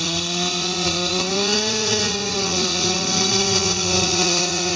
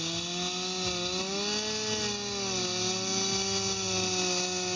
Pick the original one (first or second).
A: second